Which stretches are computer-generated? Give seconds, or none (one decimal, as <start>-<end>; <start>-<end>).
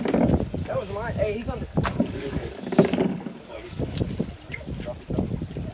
0.6-4.0